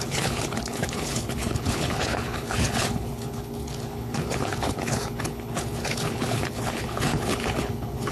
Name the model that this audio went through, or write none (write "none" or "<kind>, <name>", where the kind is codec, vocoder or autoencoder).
codec, HILCodec